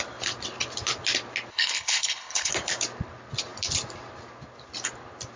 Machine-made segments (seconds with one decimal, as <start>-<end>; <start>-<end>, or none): 1.5-2.5